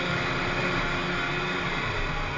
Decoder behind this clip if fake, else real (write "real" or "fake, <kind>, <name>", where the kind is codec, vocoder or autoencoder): real